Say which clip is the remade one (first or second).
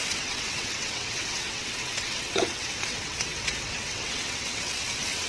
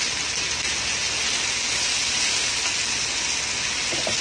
first